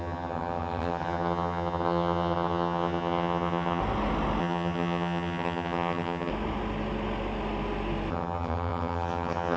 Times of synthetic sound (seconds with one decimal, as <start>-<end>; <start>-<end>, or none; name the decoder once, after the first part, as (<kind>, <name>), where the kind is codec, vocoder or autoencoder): 0.0-3.8 (vocoder, HiFi-GAN); 4.4-6.3; 8.1-9.6